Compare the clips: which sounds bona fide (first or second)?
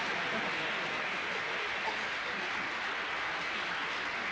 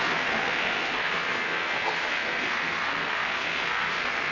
first